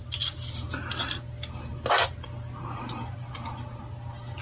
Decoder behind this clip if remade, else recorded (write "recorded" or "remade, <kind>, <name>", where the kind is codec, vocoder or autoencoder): recorded